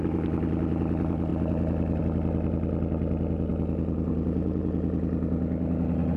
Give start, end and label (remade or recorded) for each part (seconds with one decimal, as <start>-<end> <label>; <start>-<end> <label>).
0.0-6.2 recorded